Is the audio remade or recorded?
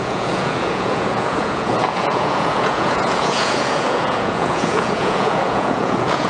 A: remade